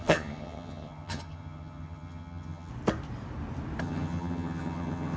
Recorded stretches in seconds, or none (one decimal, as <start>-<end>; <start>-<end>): 2.7-3.8